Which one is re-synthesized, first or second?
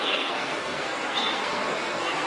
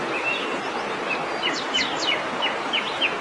first